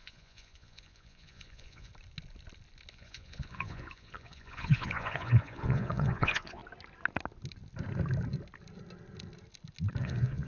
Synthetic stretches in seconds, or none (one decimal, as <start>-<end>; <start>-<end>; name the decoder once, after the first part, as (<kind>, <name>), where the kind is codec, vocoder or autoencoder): 0.0-1.9 (vocoder, Vocos); 2.9-6.6; 10.0-10.5